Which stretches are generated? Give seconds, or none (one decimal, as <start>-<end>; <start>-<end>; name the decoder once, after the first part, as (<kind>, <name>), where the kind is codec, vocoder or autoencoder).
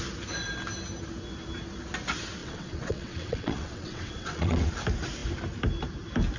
2.4-4.7 (vocoder, WaveNeXt)